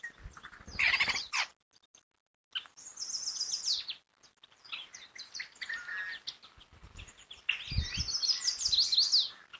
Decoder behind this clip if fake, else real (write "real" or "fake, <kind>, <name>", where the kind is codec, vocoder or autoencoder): real